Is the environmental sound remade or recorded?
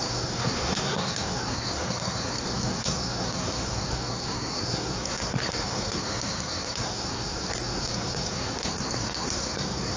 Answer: remade